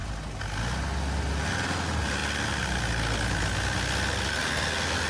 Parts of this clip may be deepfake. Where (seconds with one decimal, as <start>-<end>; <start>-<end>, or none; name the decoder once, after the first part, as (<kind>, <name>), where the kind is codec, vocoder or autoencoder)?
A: none